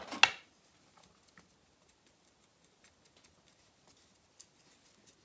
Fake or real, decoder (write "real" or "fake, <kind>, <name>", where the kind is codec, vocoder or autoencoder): real